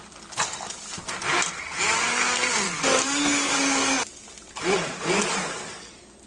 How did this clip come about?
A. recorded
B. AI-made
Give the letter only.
A